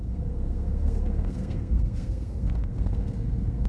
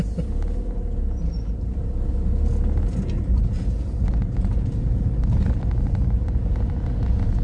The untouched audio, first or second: second